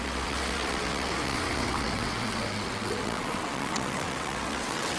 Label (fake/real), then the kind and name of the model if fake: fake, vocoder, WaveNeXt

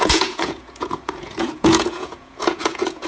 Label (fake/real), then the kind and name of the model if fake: fake, vocoder, Vocos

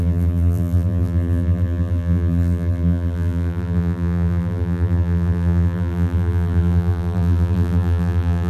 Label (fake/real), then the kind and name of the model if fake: fake, vocoder, BigVGAN v2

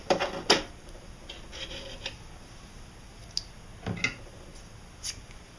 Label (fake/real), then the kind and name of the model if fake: real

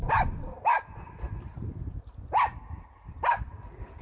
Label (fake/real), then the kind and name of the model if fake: real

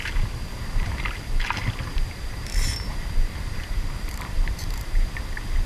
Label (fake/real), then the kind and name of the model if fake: fake, vocoder, BigVGAN v2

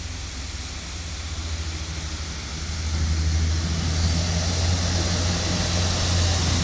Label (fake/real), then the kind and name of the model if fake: real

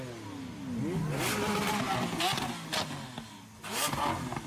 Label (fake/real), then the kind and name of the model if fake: real